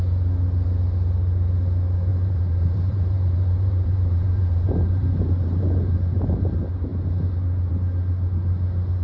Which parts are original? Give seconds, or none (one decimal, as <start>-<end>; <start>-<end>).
0.0-2.1; 5.6-9.0